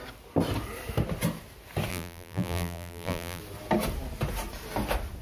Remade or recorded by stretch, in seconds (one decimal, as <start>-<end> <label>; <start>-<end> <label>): 0.0-1.9 recorded; 1.9-3.4 remade; 3.4-5.2 recorded